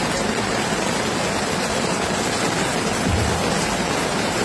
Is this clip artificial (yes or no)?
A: no